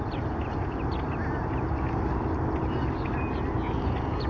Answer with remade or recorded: recorded